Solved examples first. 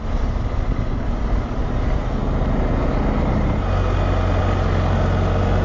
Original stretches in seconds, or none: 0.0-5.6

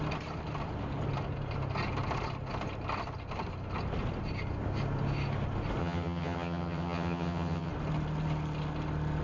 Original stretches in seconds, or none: 0.0-5.8; 7.7-9.2

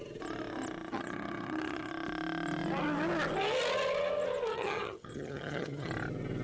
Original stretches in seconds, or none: 0.0-0.9; 1.9-4.5; 5.9-6.4

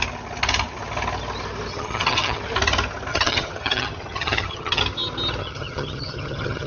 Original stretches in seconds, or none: 0.0-1.7; 2.4-3.1; 4.8-5.4

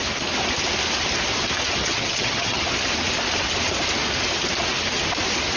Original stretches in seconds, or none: 0.0-1.8; 2.6-5.6

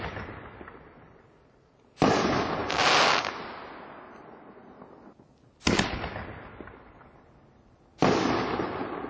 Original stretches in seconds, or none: 0.0-9.1

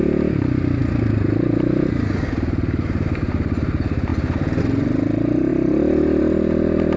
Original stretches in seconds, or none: 0.0-7.0

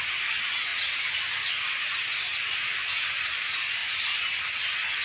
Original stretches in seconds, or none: 0.0-5.0